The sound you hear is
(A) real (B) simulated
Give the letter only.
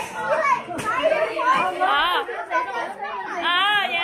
A